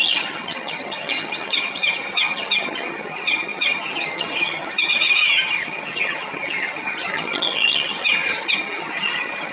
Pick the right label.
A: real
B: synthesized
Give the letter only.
B